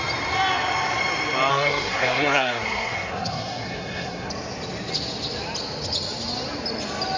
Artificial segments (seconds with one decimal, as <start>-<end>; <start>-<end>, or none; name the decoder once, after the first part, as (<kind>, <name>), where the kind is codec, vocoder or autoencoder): 1.5-4.3 (codec, SNAC)